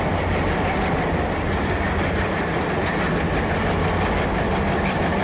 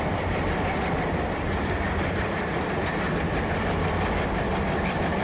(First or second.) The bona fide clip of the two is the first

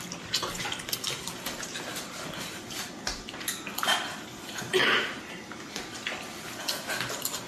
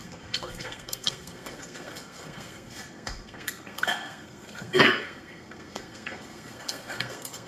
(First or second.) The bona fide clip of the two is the first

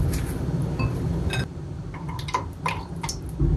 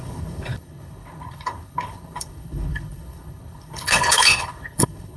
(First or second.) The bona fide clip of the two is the first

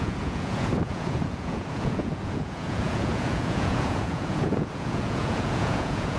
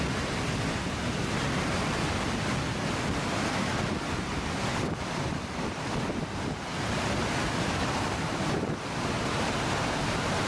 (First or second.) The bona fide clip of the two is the second